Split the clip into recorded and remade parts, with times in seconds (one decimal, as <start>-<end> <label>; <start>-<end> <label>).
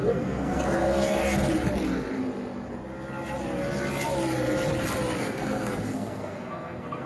0.0-1.2 remade; 1.2-5.2 recorded; 5.2-7.1 remade